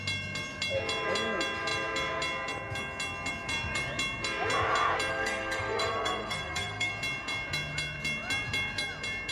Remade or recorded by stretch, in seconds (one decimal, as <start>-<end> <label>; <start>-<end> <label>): 0.0-5.1 recorded; 5.1-6.9 remade; 6.9-9.3 recorded